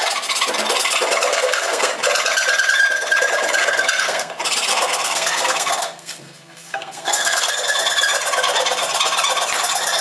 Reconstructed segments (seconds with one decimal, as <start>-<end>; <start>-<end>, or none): 1.3-1.9; 3.6-4.3; 4.7-7.5